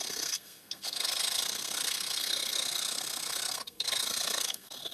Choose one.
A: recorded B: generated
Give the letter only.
B